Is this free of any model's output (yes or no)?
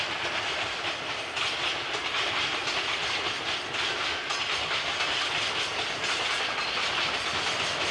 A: yes